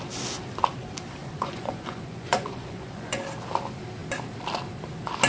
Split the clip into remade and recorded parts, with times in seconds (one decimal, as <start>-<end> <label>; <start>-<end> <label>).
0.0-1.2 recorded; 1.2-3.2 remade; 3.2-5.3 recorded